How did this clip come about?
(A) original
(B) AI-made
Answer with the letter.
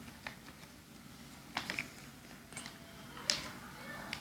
A